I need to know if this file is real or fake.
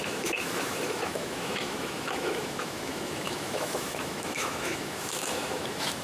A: fake